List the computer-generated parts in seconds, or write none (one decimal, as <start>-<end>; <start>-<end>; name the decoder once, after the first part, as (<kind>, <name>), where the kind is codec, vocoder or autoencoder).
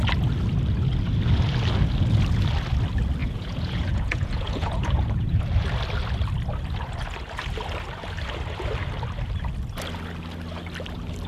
3.2-5.4 (vocoder, Vocos)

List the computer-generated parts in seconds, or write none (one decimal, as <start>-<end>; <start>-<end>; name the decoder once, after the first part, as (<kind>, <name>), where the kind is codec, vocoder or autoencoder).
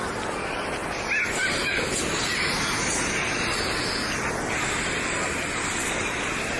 none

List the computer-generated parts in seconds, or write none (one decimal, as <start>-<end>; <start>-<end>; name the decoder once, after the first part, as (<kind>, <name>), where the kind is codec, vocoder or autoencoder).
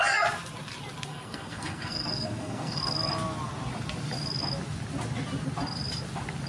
1.1-2.8 (codec, SNAC)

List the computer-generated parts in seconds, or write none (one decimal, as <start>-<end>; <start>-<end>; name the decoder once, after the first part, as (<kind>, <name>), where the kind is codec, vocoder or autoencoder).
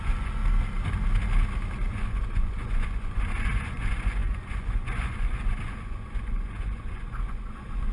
0.0-0.4 (vocoder, Vocos); 1.9-7.9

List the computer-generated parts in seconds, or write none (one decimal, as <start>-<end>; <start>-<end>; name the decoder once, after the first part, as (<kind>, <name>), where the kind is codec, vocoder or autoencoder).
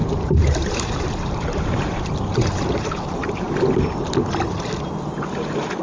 0.0-3.5 (vocoder, BigVGAN v2)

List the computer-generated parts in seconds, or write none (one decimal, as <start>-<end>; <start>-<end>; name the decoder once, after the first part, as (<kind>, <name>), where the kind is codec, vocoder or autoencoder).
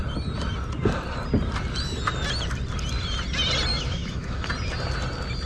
3.7-4.5 (autoencoder, DAC-VAE)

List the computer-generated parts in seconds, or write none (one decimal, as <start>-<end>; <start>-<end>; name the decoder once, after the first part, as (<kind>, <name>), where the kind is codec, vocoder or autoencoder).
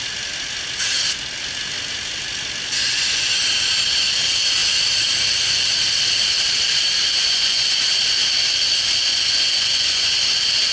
2.7-3.4 (vocoder, Vocos); 7.1-8.0; 9.1-10.1